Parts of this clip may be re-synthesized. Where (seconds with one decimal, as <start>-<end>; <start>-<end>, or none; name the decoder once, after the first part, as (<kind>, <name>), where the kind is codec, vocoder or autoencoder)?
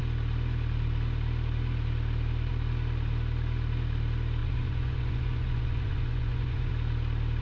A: 4.4-6.7 (vocoder, Vocos)